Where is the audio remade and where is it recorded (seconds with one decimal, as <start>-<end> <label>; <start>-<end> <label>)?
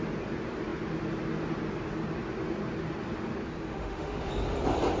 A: 0.0-3.7 recorded; 3.7-4.3 remade; 4.3-5.0 recorded